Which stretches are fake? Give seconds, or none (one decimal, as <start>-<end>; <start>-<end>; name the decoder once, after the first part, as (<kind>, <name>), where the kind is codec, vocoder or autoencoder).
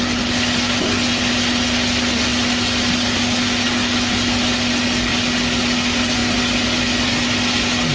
none